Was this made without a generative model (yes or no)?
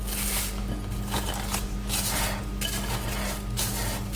yes